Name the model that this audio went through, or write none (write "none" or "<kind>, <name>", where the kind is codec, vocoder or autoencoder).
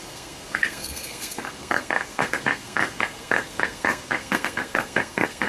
codec, SNAC